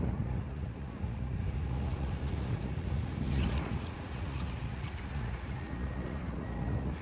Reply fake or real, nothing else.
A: fake